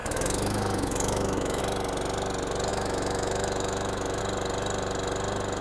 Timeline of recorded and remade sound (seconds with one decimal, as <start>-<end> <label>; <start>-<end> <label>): 0.0-1.6 remade; 1.6-2.7 recorded; 2.7-4.2 remade; 4.2-5.6 recorded